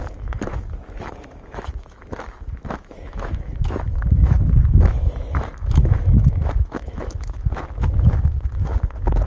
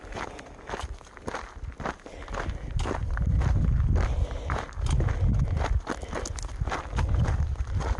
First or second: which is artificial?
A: first